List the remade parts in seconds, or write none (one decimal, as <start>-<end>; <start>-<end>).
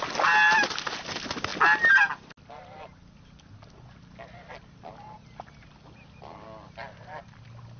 none